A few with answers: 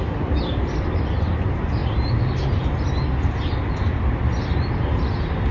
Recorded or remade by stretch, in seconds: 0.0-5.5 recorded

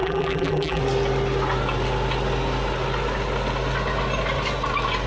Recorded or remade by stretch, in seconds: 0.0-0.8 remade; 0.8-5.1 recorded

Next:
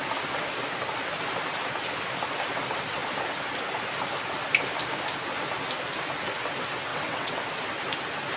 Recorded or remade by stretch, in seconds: 0.0-6.9 recorded; 6.9-7.4 remade; 7.4-8.4 recorded